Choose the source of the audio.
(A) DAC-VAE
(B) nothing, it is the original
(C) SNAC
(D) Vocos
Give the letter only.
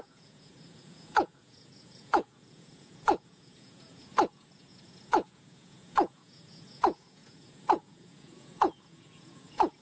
D